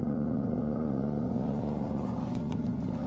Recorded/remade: remade